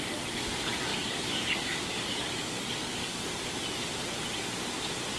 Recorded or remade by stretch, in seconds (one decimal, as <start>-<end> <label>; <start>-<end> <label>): 0.0-0.9 recorded; 0.9-3.3 remade; 3.3-5.2 recorded